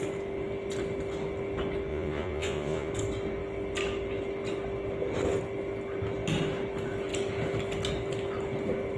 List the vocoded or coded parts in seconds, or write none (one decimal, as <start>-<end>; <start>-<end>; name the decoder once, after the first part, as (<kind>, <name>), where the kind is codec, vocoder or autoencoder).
1.9-2.9 (vocoder, Vocos)